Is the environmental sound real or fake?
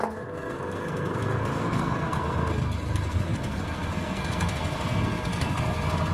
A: fake